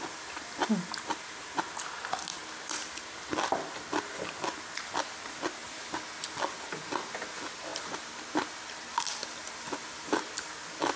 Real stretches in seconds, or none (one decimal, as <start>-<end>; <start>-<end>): 0.0-2.4; 3.1-7.7; 8.9-11.0